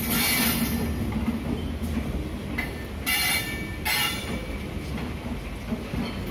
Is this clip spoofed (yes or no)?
no